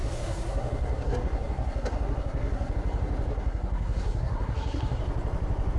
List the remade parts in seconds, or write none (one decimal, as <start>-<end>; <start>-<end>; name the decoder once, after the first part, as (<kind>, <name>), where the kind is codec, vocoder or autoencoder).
0.0-2.7 (codec, SNAC); 3.3-5.0